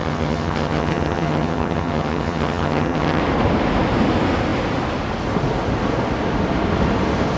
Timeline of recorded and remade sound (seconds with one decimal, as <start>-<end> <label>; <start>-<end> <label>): 0.0-3.2 remade; 3.2-7.4 recorded